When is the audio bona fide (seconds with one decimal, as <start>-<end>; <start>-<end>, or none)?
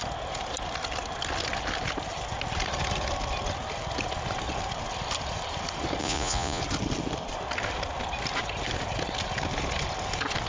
0.0-6.0; 6.6-10.5